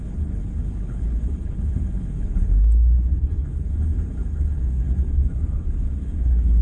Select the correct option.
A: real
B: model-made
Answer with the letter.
B